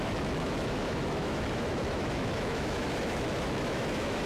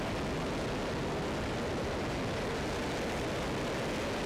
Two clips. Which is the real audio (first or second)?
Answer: second